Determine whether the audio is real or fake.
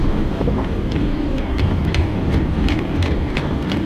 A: fake